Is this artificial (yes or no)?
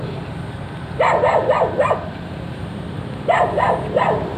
no